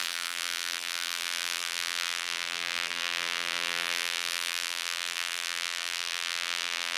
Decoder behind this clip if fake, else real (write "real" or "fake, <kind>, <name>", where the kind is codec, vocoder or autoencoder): fake, vocoder, BigVGAN v2